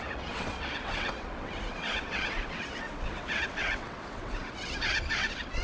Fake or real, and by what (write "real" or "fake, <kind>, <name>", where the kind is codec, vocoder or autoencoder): fake, vocoder, WaveNeXt